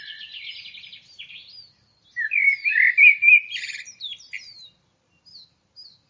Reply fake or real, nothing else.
real